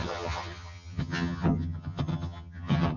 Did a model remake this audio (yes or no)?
yes